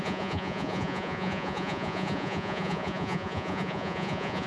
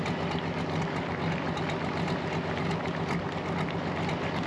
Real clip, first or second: second